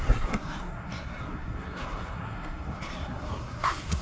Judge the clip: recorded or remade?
remade